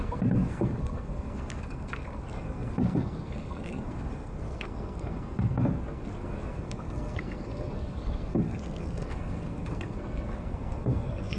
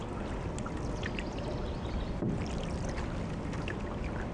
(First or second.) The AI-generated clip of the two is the first